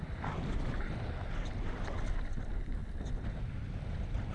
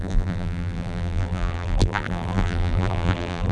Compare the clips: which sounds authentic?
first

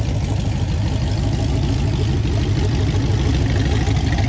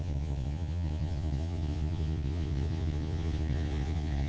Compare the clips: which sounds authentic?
first